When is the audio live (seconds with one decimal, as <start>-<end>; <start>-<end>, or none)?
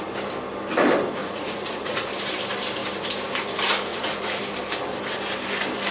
0.0-1.2; 2.1-3.9; 4.4-5.9